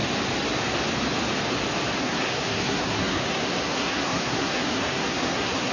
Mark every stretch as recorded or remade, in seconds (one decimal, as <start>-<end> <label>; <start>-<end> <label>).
0.0-2.0 recorded; 2.0-5.7 remade